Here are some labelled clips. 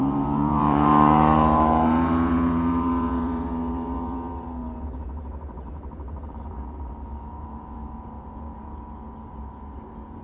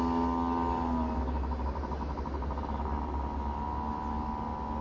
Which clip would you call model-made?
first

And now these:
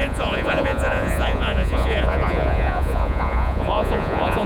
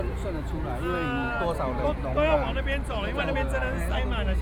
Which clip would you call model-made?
first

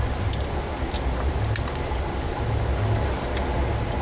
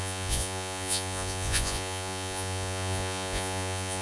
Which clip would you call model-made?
second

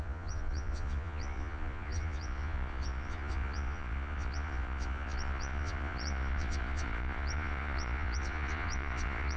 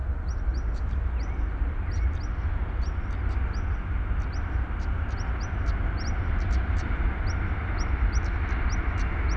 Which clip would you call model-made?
first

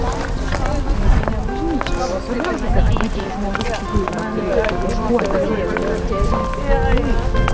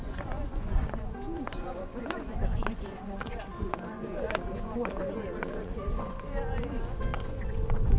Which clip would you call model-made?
second